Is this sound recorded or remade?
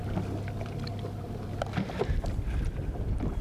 recorded